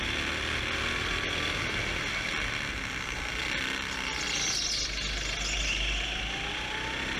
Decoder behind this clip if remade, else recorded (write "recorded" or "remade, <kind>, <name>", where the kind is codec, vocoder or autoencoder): recorded